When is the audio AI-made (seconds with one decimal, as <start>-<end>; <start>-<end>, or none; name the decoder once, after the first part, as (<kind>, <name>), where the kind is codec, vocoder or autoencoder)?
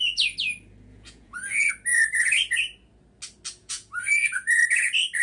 0.9-1.7 (vocoder, Vocos); 3.6-4.6